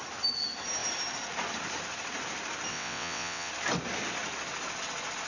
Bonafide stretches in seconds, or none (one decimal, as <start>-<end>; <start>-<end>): 0.0-2.7; 3.5-5.3